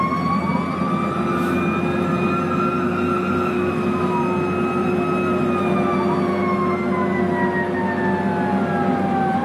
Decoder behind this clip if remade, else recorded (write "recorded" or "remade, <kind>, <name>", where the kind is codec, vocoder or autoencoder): recorded